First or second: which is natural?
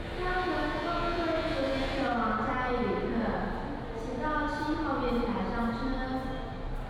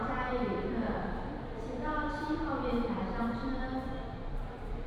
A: first